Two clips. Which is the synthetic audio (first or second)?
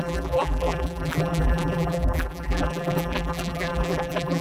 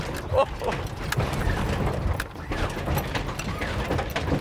first